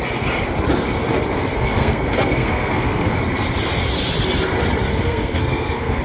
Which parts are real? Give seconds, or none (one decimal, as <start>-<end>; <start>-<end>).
0.0-1.5; 3.2-4.9